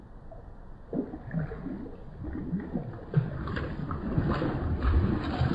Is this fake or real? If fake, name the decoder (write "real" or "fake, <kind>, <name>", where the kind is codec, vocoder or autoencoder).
real